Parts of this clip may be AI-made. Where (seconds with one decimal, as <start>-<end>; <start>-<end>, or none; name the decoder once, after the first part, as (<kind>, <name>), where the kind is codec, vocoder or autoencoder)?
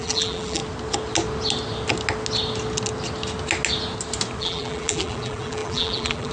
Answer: 0.0-0.6 (vocoder, BigVGAN v2); 4.4-6.3